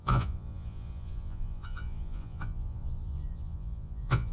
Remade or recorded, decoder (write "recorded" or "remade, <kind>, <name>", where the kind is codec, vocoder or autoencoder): remade, vocoder, Vocos